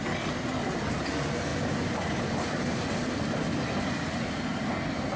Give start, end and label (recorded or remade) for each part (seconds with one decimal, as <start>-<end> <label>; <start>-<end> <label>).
0.0-5.2 recorded